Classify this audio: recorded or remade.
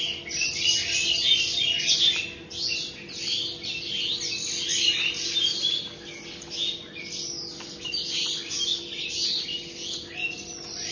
recorded